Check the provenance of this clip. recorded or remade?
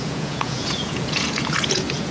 remade